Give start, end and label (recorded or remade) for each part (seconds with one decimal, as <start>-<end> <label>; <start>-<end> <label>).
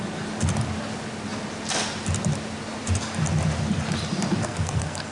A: 0.0-4.4 recorded; 4.4-5.1 remade